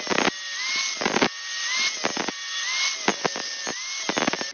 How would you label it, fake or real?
real